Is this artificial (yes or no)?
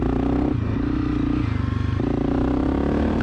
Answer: no